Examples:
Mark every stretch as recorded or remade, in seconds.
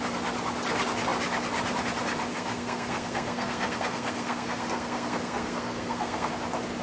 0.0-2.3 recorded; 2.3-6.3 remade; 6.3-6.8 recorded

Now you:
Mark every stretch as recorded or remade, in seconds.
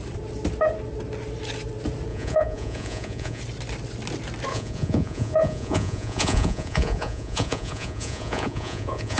0.0-2.1 recorded; 2.1-3.4 remade; 3.4-4.5 recorded; 4.5-9.2 remade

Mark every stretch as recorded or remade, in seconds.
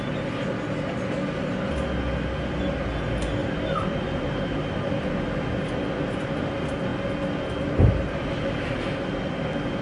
0.0-3.4 recorded; 3.4-4.9 remade; 4.9-9.8 recorded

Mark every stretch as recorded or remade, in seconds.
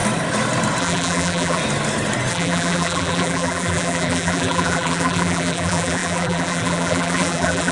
0.0-0.8 recorded; 0.8-1.6 remade; 1.6-2.3 recorded; 2.3-7.7 remade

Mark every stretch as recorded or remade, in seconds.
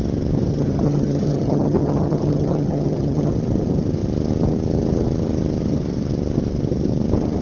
0.0-0.5 recorded; 0.5-3.3 remade; 3.3-7.4 recorded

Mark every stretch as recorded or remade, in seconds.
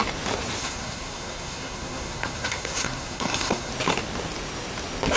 0.0-0.6 recorded; 0.6-3.7 remade; 3.7-5.2 recorded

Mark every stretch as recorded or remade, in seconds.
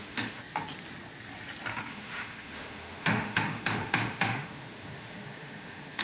0.0-0.4 remade; 0.4-1.9 recorded; 1.9-6.0 remade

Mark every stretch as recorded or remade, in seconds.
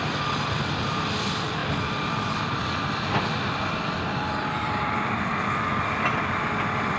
0.0-7.0 remade